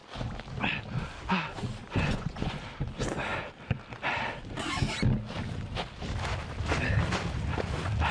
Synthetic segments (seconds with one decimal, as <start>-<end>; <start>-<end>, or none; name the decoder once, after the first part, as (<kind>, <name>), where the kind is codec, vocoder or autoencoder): 1.8-2.6 (vocoder, Vocos)